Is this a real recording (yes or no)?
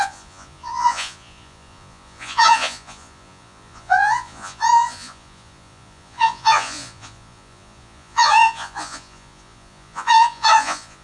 no